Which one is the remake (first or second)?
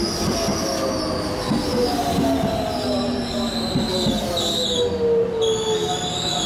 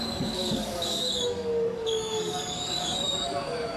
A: second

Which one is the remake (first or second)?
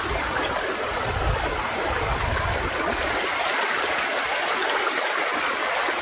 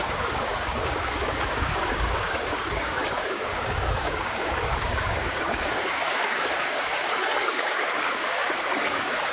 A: second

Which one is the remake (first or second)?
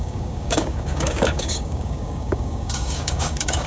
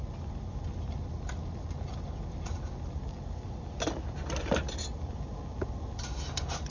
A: first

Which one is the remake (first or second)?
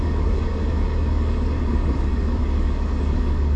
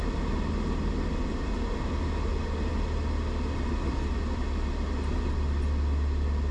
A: first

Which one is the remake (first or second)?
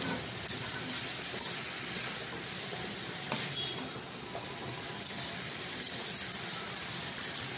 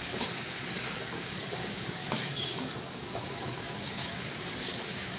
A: second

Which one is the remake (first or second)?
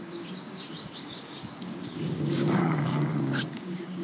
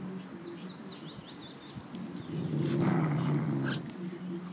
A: first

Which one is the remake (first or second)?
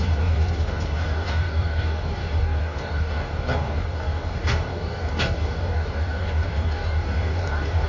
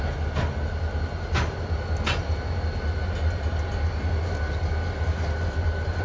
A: first